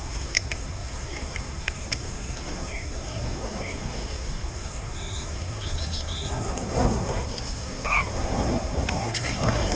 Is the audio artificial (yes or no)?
yes